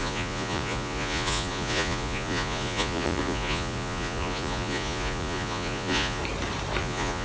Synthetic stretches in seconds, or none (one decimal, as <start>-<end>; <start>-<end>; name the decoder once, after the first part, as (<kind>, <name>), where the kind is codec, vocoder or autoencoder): 0.0-6.2 (vocoder, Vocos); 6.8-7.2